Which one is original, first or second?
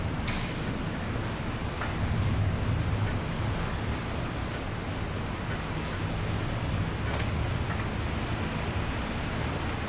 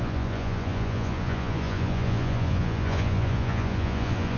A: first